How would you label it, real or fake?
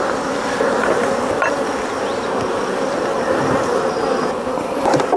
real